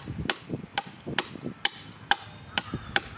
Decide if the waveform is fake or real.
fake